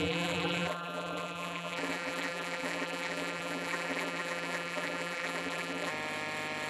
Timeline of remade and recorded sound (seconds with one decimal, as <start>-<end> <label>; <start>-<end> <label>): 0.0-5.9 remade; 5.9-6.7 recorded